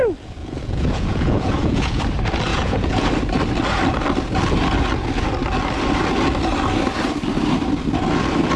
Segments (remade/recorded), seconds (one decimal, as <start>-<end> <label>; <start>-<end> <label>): 0.0-0.4 recorded; 0.4-2.0 remade; 2.0-2.5 recorded; 2.5-3.1 remade; 3.1-8.6 recorded